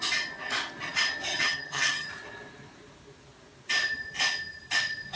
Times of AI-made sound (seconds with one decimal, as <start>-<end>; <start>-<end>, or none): 1.3-2.1